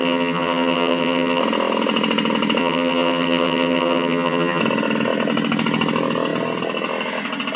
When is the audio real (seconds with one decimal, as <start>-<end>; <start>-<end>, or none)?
1.4-2.6; 4.6-7.6